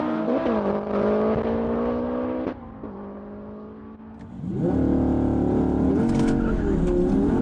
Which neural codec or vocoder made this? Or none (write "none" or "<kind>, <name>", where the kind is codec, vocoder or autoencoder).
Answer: none